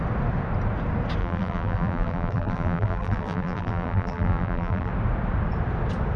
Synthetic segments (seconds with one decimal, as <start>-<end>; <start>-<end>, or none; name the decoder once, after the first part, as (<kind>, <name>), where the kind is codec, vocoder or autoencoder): 1.2-4.9 (vocoder, BigVGAN v2)